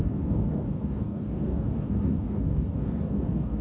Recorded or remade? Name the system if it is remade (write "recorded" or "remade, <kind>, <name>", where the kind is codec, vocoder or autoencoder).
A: remade, codec, DAC